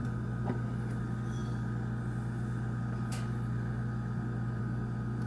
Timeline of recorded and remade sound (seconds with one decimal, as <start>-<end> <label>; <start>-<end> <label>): 0.0-5.3 recorded